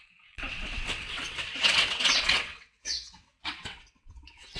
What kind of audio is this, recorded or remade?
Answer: remade